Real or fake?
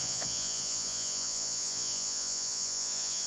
fake